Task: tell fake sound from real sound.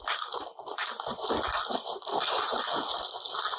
real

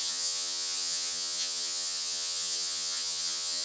fake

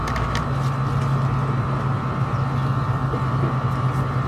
real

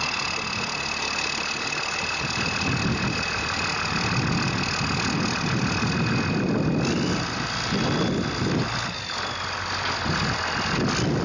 real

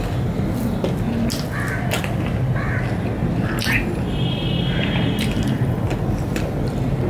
real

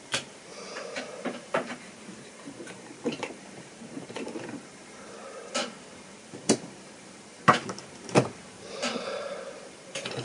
fake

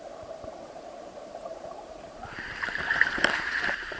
fake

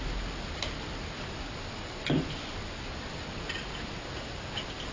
real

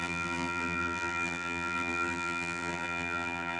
fake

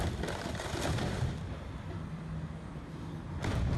real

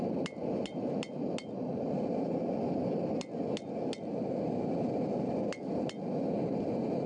real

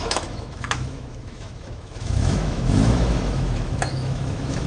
fake